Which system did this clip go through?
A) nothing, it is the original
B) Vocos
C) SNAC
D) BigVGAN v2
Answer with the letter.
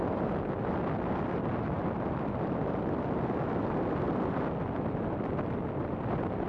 A